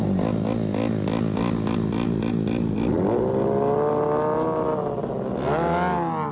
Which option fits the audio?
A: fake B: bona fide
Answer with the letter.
B